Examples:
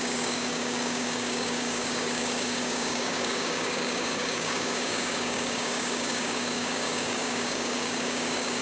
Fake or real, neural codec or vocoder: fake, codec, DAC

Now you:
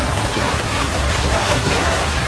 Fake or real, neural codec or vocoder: fake, codec, SNAC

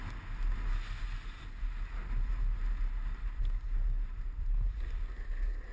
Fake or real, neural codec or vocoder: real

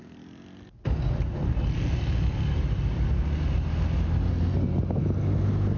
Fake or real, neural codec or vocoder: real